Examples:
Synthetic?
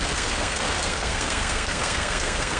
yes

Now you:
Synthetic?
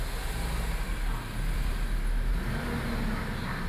no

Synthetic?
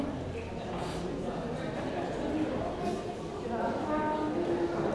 no